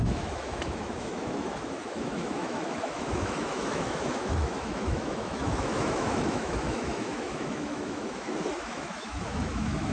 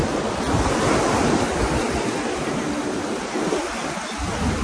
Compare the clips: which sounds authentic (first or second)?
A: second